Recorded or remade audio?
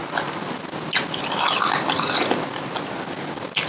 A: recorded